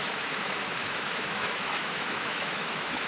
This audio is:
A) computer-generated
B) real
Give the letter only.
A